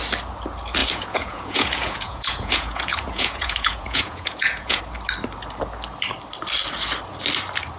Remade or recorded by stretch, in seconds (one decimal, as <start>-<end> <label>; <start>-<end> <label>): 0.0-0.8 recorded; 0.8-4.8 remade; 4.8-7.8 recorded